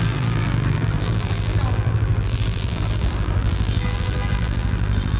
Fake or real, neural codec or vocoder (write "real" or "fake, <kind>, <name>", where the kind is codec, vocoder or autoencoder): fake, vocoder, BigVGAN v2